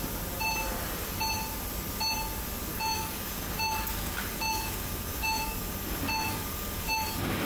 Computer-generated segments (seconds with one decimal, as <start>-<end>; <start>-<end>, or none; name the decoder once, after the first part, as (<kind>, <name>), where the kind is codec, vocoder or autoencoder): 2.7-7.5 (codec, DAC)